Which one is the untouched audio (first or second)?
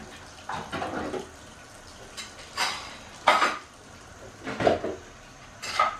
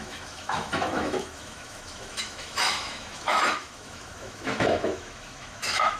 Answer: first